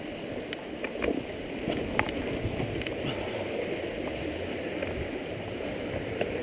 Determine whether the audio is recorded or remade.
recorded